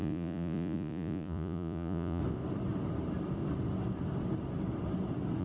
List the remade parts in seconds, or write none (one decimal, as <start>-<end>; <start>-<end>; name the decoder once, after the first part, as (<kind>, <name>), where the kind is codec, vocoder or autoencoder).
0.0-2.2 (vocoder, Vocos)